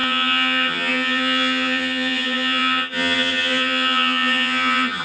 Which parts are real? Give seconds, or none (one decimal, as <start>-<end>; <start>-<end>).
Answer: none